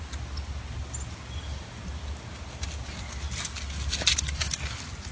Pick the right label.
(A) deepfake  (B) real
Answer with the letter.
B